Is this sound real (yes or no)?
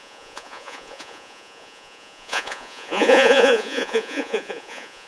no